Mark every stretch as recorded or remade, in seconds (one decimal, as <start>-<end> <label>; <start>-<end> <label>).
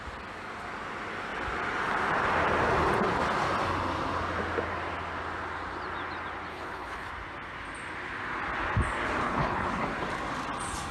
0.0-6.5 recorded; 6.5-7.1 remade; 7.1-9.2 recorded; 9.2-9.8 remade; 9.8-10.9 recorded